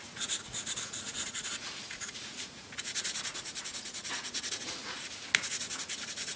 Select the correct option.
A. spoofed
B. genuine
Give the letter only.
A